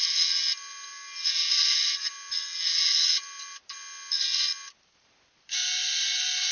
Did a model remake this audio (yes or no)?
no